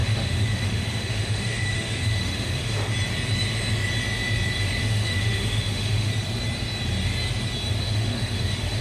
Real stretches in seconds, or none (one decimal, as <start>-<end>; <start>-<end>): 2.9-4.8; 6.1-7.8